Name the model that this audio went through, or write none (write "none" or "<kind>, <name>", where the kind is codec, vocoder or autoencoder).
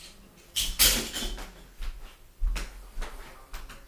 none